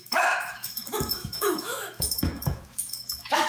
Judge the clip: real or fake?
fake